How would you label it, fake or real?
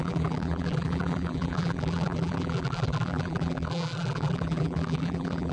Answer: fake